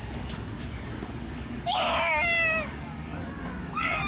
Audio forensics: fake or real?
fake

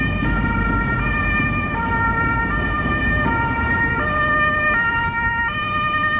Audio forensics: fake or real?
real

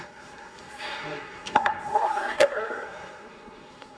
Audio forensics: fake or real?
fake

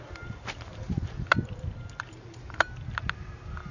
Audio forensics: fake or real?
real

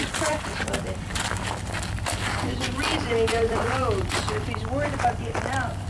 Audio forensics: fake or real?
fake